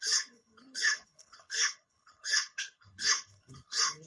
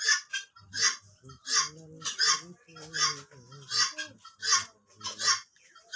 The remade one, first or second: first